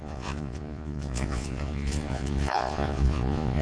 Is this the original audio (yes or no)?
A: no